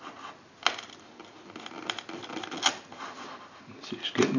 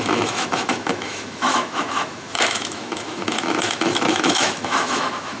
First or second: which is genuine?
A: first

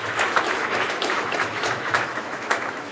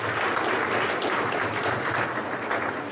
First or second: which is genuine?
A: second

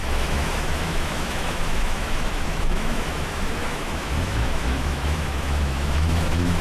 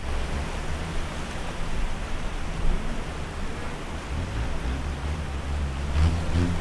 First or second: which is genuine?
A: second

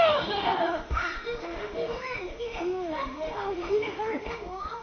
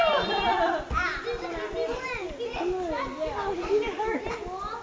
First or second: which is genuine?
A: second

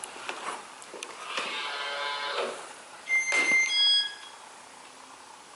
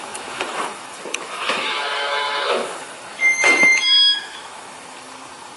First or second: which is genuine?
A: first